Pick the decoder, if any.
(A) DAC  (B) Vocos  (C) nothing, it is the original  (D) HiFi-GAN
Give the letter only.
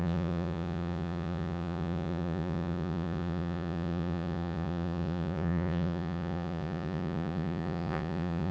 B